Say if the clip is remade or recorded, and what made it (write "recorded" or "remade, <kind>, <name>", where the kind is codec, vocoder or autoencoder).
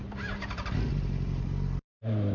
remade, vocoder, BigVGAN v2